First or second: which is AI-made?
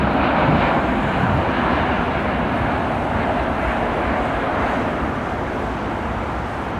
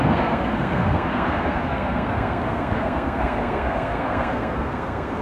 second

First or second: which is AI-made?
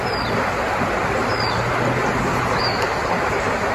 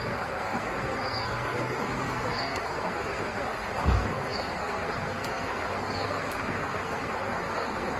second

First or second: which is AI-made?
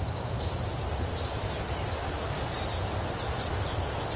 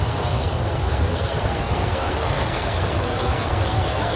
second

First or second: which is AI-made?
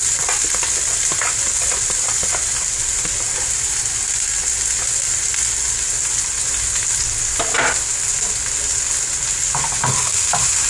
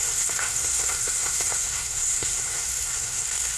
second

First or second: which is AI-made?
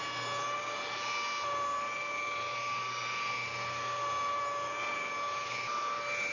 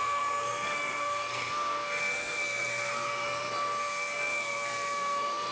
second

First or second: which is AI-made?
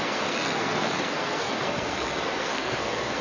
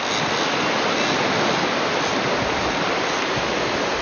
first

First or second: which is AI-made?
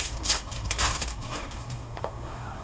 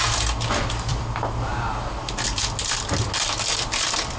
first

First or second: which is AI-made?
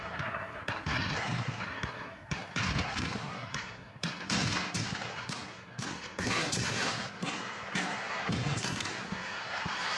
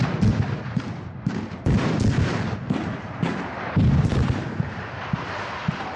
first